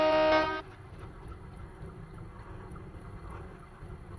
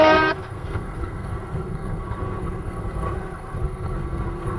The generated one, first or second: second